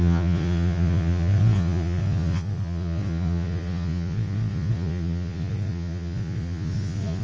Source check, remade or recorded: remade